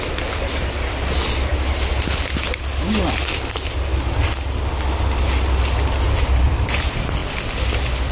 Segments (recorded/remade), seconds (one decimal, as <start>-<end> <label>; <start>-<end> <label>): 0.0-8.1 recorded